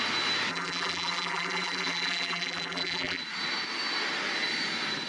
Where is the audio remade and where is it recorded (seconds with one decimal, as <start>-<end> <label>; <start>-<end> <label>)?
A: 0.0-0.5 recorded; 0.5-3.2 remade; 3.2-5.1 recorded